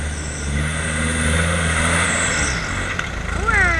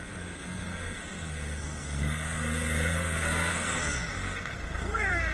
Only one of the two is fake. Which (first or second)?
second